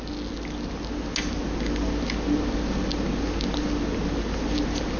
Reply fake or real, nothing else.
real